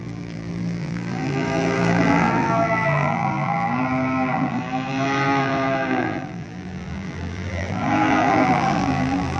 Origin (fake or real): fake